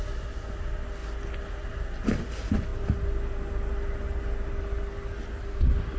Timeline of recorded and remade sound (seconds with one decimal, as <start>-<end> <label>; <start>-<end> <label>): 0.0-6.0 recorded